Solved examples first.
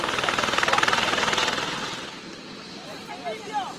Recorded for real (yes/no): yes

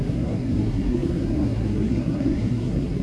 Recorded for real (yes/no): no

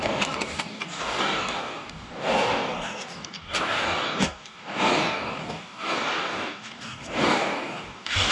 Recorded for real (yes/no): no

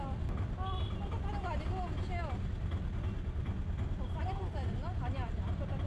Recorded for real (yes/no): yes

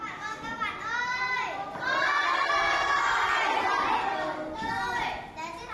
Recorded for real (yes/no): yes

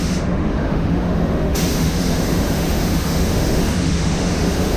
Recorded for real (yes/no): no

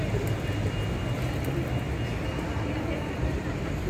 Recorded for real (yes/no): yes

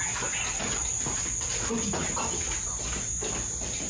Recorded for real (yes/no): yes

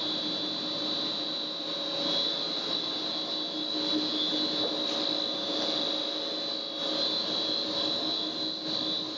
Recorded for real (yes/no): yes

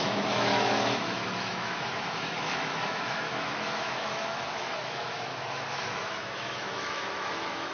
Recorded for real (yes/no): no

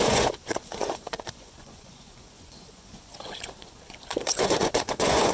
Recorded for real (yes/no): no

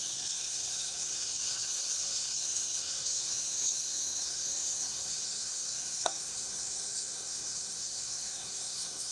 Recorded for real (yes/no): no